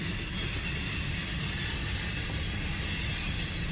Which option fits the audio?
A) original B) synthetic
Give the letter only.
A